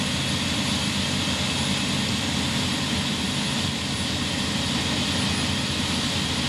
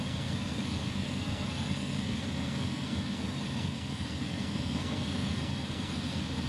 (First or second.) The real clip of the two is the first